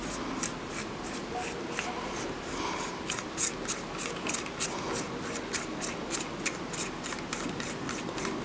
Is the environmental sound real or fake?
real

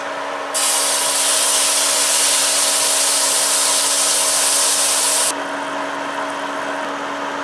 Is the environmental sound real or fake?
real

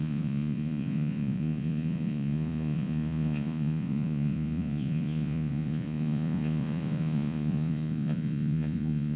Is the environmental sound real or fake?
fake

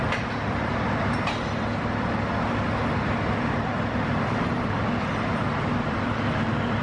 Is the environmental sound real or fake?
real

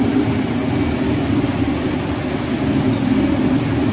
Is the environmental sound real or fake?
real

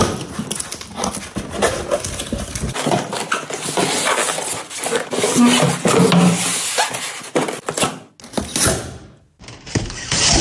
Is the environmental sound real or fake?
real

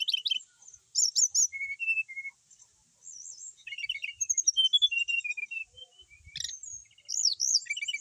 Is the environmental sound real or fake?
real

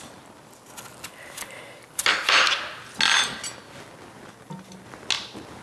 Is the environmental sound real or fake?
real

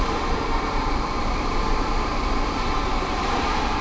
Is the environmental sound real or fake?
fake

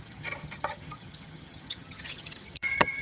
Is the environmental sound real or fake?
fake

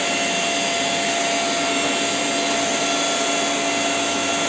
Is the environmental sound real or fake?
real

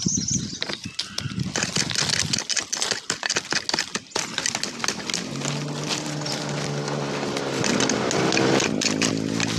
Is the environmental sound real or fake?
real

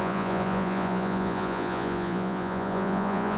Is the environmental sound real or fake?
fake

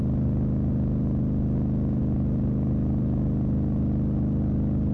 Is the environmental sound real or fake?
real